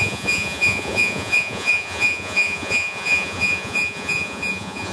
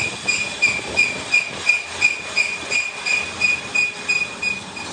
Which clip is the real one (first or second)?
second